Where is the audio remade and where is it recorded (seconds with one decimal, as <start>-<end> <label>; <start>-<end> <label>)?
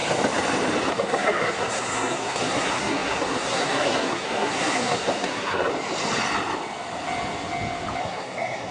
0.0-0.9 recorded; 0.9-5.7 remade; 5.7-8.0 recorded; 8.0-8.7 remade